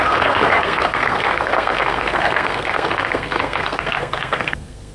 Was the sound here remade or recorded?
remade